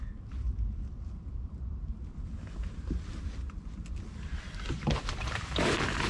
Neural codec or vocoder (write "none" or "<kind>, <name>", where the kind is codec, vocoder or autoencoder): none